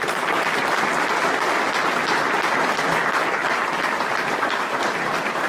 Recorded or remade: recorded